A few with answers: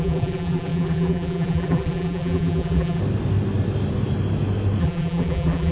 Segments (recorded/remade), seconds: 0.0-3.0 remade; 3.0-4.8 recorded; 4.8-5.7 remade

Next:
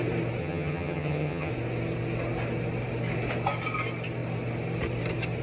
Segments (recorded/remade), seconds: 0.0-0.4 recorded; 0.4-1.5 remade; 1.5-5.4 recorded